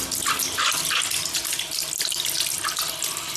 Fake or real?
real